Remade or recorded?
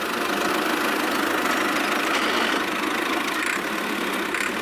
recorded